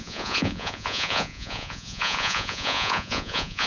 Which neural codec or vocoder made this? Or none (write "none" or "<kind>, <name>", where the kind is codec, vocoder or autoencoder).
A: vocoder, Vocos